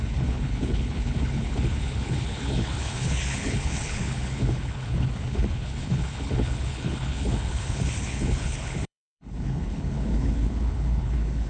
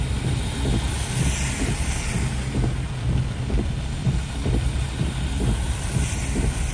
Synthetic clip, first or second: first